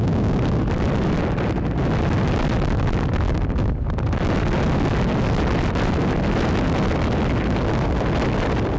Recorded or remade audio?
recorded